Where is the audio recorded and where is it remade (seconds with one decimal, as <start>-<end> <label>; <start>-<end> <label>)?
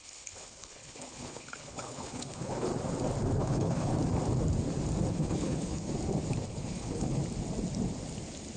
0.0-2.7 remade; 2.7-3.4 recorded; 3.4-3.9 remade; 3.9-5.1 recorded; 5.1-5.9 remade; 5.9-6.4 recorded; 6.4-7.2 remade; 7.2-8.6 recorded